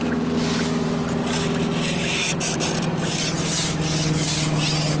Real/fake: real